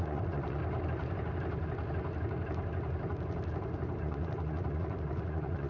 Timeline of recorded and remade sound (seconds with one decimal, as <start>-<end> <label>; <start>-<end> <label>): 0.0-0.6 remade; 0.6-4.0 recorded; 4.0-5.7 remade